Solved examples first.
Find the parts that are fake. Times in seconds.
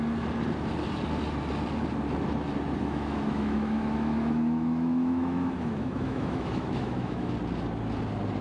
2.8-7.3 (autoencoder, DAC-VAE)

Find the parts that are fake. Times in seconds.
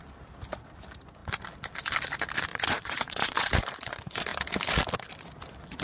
2.5-3.5 (vocoder, Vocos)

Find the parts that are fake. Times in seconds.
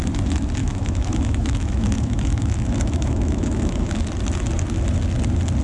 0.6-4.0 (autoencoder, DAC-VAE)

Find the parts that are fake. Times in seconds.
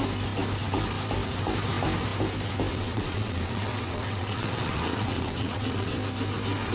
2.7-5.9 (vocoder, WaveNeXt)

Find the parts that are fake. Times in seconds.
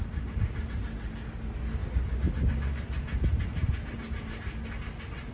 none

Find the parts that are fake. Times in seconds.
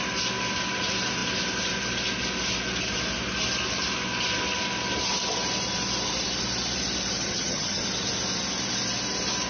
7.2-7.8 (vocoder, HiFi-GAN)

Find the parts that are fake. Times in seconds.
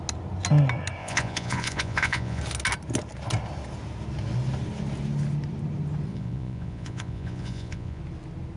1.0-2.4 (vocoder, Vocos); 6.1-8.0